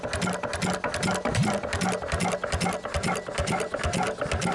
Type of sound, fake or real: real